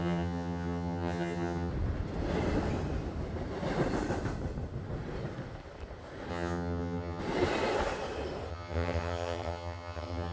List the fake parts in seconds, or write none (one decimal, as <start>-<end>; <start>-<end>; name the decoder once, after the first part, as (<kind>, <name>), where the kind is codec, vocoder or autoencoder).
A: 0.0-1.7 (vocoder, HiFi-GAN); 6.3-7.2; 8.5-10.3